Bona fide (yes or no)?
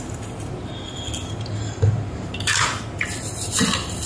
yes